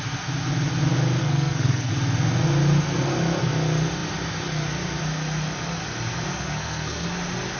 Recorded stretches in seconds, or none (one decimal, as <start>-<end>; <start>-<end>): 0.0-1.2; 1.9-6.3; 7.1-7.6